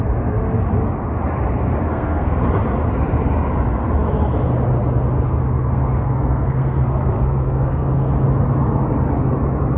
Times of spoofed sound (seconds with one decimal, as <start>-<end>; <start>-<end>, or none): 1.9-2.5; 5.4-8.1